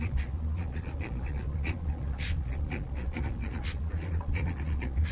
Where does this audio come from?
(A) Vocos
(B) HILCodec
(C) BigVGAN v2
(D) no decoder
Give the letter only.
A